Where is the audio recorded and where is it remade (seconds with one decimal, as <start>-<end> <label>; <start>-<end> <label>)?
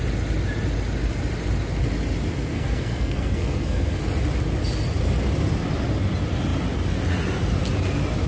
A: 0.0-2.5 recorded; 2.5-4.0 remade; 4.0-8.3 recorded